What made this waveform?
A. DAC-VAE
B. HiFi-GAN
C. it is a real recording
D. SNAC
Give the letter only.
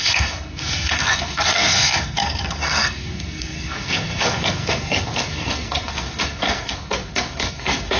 D